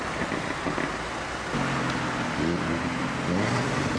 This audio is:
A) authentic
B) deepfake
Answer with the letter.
A